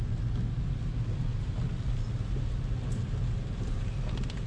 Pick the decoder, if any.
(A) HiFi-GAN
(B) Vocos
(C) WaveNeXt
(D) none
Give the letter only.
D